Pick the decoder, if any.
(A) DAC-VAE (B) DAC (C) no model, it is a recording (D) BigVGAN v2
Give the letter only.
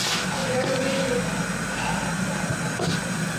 C